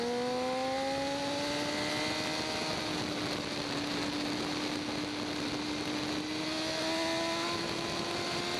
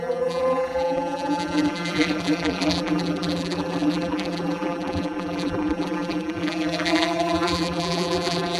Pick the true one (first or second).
first